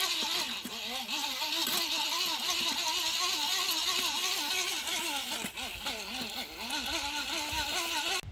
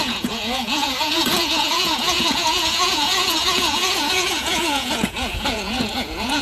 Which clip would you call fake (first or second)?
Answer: second